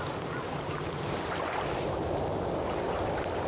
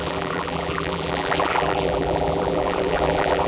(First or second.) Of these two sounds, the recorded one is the first